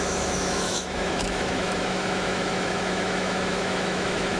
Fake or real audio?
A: fake